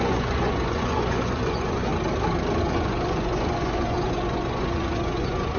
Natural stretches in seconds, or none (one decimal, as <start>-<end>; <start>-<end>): 1.9-2.6